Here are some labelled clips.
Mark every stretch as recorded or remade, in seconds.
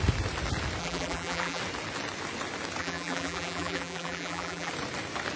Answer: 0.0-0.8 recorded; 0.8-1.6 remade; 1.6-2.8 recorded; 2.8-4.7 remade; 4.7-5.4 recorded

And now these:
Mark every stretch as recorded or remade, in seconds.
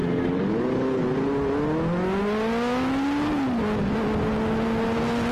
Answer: 0.0-5.3 recorded